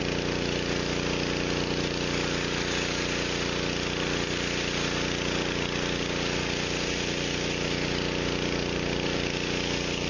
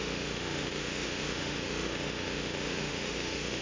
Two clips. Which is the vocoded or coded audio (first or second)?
second